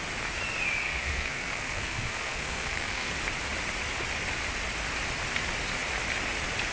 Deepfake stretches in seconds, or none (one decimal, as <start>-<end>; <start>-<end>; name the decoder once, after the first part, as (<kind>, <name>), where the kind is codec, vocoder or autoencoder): 0.8-3.1 (codec, SNAC)